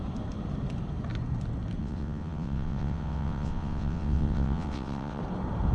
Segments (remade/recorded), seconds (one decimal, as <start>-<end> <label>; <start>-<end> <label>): 0.0-1.8 recorded; 1.8-5.2 remade; 5.2-5.7 recorded